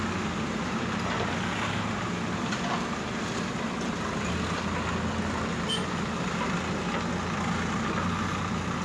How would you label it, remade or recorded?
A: recorded